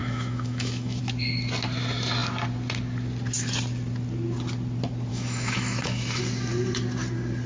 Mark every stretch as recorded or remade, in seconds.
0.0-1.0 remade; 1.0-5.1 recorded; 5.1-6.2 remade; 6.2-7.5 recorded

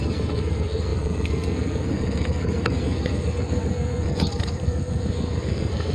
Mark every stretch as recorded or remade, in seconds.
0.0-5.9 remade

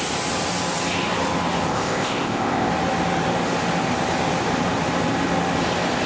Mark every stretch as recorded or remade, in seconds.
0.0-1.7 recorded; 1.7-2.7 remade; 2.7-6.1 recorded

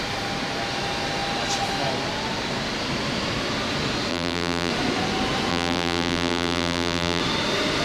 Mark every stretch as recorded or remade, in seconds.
0.0-4.1 recorded; 4.1-4.7 remade; 4.7-5.5 recorded; 5.5-7.2 remade; 7.2-7.8 recorded

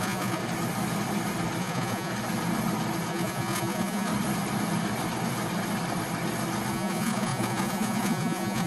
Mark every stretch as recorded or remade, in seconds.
0.0-0.4 remade; 0.4-1.6 recorded; 1.6-2.1 remade; 2.1-3.1 recorded; 3.1-4.1 remade; 4.1-6.7 recorded; 6.7-8.7 remade

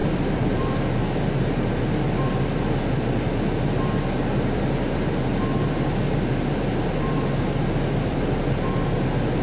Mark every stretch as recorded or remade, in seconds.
0.0-0.7 remade; 0.7-9.4 recorded